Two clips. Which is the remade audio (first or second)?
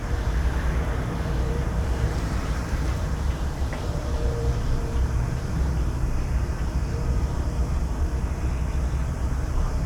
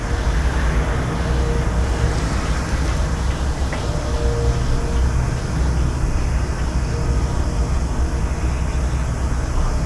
first